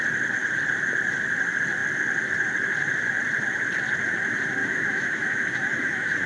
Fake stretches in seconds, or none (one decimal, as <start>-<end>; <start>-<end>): 4.6-6.3